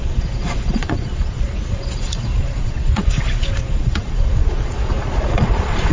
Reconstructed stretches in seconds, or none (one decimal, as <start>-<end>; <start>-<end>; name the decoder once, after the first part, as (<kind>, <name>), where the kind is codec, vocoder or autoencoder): 0.0-5.9 (vocoder, Vocos)